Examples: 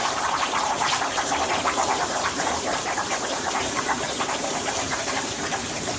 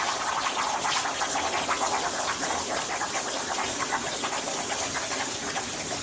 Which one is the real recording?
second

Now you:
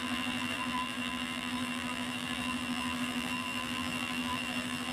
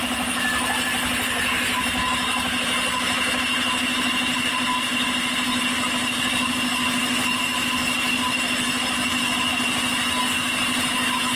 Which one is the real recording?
second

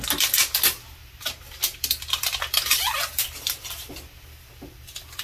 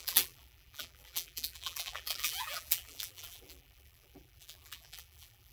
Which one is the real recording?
first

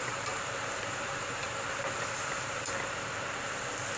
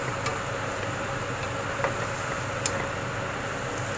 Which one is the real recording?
second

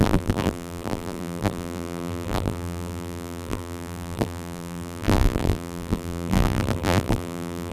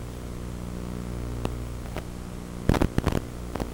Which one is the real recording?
second